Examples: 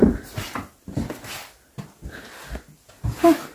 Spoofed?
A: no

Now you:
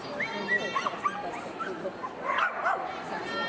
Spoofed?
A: no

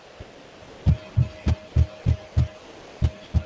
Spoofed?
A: no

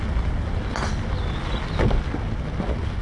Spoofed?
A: no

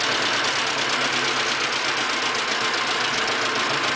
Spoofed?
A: no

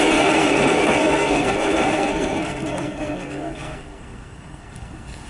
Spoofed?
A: yes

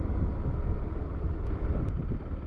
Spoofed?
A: no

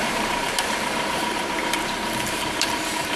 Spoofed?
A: yes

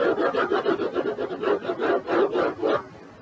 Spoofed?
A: no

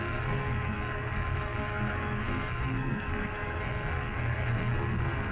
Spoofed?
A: yes